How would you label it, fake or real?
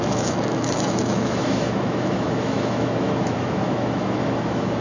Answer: fake